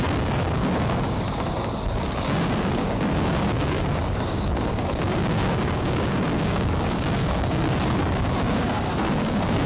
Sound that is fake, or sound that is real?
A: fake